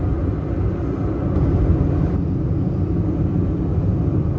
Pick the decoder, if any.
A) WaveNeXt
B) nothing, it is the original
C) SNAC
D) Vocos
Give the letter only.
B